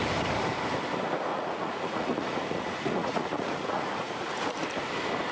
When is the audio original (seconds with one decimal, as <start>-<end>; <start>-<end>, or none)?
0.0-1.3; 4.5-5.3